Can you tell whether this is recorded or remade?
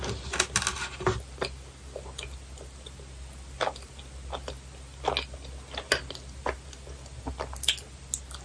recorded